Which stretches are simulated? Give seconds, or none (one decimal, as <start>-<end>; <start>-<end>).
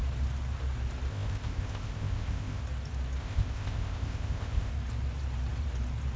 1.1-2.6; 3.2-4.7